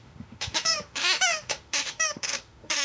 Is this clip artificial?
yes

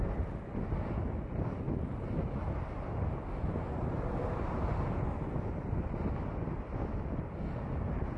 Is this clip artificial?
no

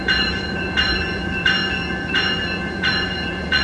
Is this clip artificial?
yes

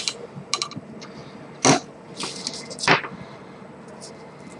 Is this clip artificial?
no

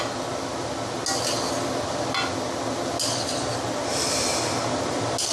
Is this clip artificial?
no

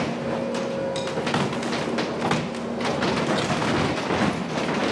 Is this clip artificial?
no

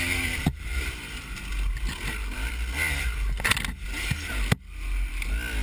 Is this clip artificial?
no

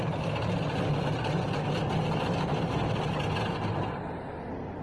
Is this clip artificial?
no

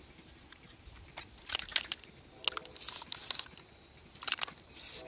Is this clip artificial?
no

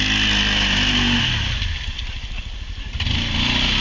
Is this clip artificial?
no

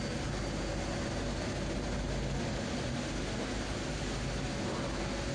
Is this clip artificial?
no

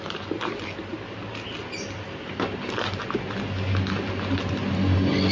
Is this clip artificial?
no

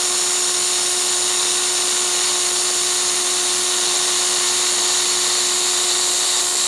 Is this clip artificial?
no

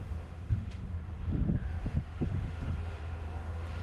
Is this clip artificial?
yes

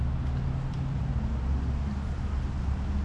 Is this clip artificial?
no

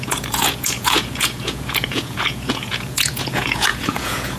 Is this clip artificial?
yes